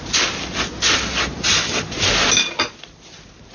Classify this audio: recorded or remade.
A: recorded